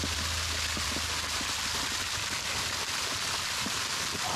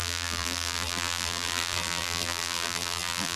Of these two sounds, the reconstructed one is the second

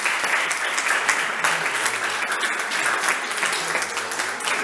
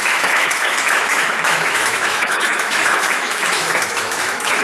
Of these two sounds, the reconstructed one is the second